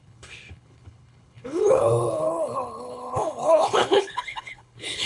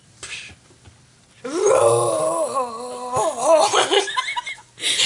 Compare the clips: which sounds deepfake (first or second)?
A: first